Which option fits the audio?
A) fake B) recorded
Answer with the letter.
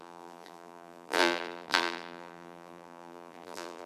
A